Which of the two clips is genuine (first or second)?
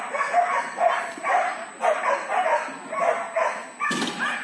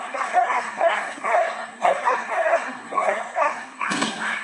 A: first